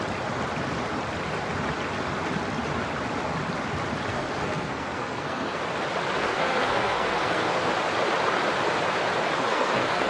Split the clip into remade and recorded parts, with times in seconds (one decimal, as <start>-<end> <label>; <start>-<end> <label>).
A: 0.0-4.1 recorded; 4.1-5.6 remade; 5.6-6.2 recorded; 6.2-7.7 remade; 7.7-9.2 recorded; 9.2-10.1 remade